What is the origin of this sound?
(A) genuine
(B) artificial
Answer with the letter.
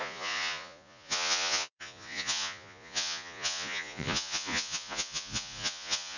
B